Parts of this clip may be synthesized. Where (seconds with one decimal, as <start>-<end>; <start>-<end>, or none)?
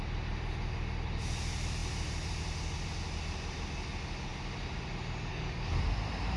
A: 5.3-5.8